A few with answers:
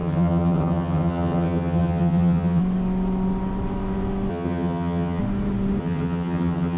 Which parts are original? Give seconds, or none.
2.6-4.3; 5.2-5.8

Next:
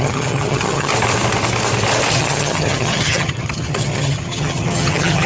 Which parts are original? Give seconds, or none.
0.9-2.1

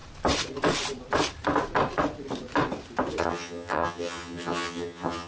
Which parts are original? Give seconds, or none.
0.0-3.2

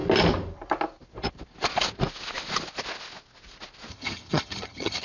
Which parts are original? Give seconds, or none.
0.0-3.9